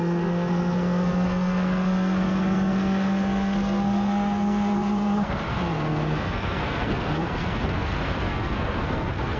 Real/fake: fake